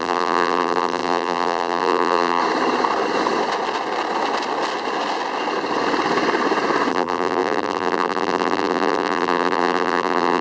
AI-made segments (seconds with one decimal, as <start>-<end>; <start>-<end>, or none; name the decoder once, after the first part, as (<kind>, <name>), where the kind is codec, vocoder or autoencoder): 0.0-2.4 (vocoder, BigVGAN v2); 6.9-10.4